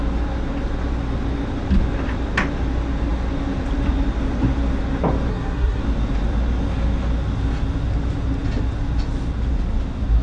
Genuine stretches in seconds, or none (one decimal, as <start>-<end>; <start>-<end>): 0.0-5.3; 5.8-10.2